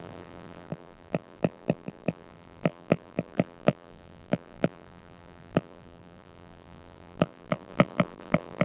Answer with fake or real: fake